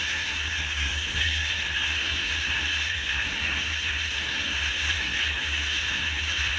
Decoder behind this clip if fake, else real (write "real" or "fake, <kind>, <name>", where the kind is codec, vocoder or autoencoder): fake, codec, SNAC